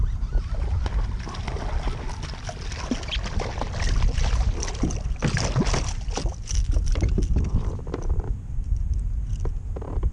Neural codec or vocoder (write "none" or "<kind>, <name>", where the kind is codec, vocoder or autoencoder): none